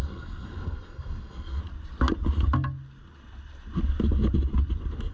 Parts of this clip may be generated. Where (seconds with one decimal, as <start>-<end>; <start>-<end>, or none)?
0.0-1.6